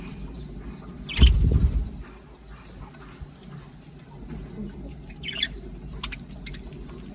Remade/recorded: recorded